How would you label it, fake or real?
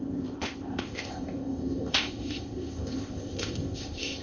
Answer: fake